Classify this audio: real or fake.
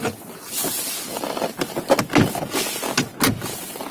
real